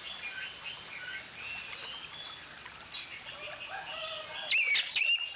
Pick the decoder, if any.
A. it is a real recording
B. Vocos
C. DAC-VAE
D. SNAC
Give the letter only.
A